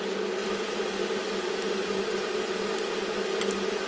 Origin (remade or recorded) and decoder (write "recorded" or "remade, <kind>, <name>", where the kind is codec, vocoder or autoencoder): recorded